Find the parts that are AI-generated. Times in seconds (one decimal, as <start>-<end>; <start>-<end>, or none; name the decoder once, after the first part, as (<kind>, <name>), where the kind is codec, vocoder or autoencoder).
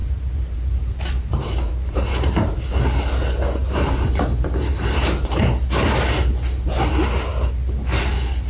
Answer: 0.0-2.5 (vocoder, BigVGAN v2); 3.6-5.4